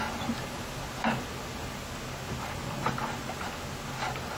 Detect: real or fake real